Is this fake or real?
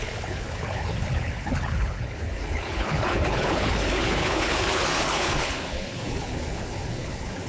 fake